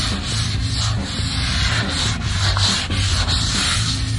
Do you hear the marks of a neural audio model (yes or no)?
no